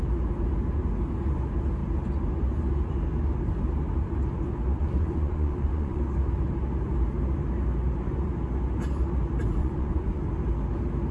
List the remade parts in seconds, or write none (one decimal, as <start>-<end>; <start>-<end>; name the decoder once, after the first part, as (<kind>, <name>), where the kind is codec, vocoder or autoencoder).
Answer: 4.8-6.0 (vocoder, Vocos); 9.6-10.2